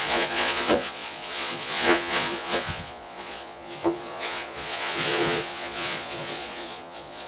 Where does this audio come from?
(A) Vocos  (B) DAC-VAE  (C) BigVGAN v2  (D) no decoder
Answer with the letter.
A